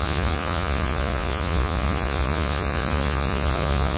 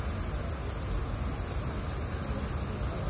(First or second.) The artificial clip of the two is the first